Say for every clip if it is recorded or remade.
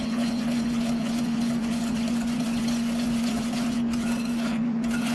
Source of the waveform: remade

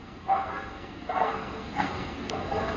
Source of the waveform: remade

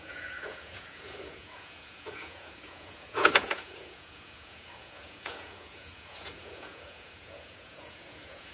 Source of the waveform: remade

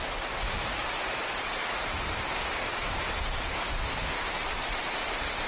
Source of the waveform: remade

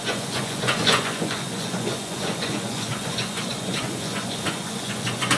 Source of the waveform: remade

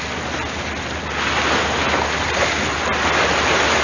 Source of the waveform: recorded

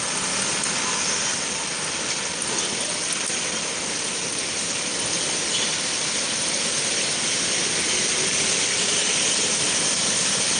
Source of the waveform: recorded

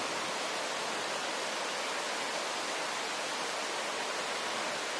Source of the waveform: recorded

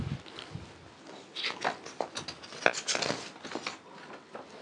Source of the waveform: recorded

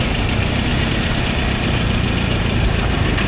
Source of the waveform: remade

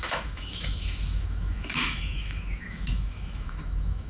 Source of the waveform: remade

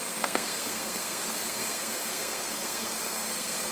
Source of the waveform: remade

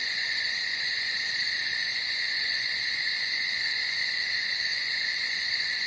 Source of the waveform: remade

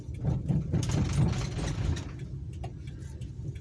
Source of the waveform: recorded